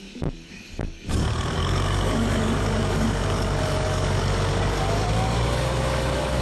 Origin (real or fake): fake